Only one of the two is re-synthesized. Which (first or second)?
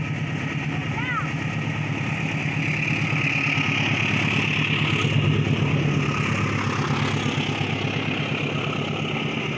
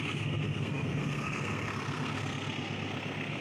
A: second